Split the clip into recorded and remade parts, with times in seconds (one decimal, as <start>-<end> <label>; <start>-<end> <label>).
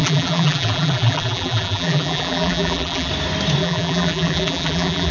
0.0-3.1 remade; 3.1-3.6 recorded; 3.6-5.1 remade